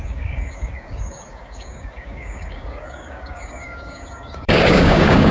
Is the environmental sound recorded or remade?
remade